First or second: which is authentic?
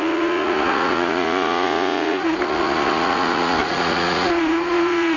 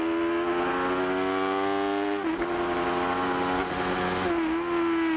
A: second